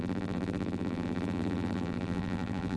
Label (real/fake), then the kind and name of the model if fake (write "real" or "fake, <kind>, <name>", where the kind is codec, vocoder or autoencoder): fake, vocoder, BigVGAN v2